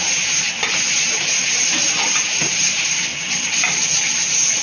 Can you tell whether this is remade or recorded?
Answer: remade